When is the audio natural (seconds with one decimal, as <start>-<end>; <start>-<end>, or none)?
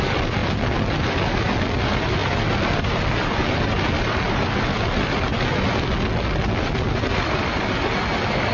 0.0-8.5